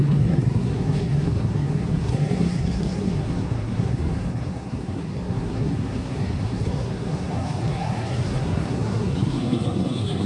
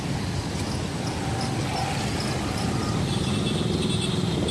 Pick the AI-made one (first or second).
first